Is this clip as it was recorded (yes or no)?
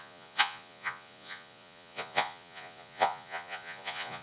no